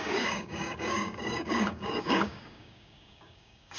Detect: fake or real fake